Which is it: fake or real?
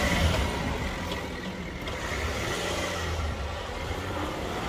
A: real